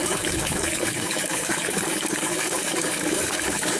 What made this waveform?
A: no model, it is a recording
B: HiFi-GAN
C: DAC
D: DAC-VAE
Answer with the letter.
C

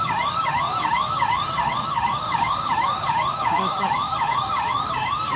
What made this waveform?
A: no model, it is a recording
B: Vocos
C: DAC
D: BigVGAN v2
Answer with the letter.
C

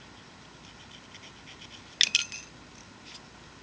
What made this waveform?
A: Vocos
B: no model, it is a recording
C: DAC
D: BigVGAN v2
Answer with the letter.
B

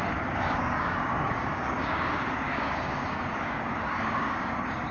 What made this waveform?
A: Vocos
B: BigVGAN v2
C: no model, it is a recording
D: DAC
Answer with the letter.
D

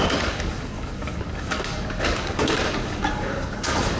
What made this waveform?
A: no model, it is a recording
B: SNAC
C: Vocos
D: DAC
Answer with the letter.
D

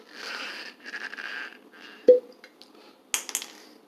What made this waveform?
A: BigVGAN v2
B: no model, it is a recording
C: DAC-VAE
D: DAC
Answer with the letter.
B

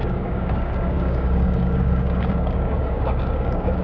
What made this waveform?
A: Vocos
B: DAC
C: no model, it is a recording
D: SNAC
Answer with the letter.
B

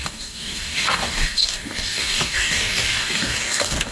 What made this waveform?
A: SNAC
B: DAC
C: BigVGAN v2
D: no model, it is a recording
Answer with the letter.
B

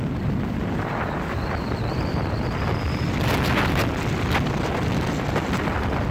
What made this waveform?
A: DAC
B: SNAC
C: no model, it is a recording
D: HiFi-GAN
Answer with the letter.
C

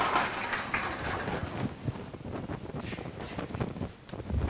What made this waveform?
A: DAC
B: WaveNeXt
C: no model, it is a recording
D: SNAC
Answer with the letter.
C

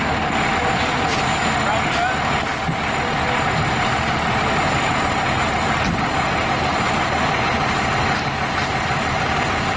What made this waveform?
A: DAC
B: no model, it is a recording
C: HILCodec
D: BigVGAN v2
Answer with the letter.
B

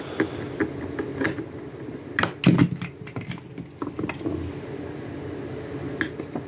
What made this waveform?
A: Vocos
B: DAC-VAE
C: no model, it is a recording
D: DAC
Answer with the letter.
C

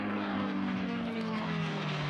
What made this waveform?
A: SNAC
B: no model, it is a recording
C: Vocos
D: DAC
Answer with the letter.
D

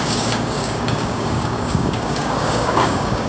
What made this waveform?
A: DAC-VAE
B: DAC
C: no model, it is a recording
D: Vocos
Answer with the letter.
B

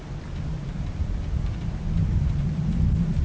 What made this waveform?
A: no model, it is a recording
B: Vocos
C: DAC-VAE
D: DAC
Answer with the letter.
A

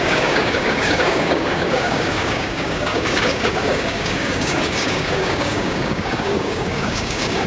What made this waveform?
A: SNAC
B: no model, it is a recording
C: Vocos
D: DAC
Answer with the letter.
D